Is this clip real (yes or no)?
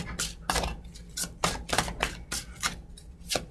yes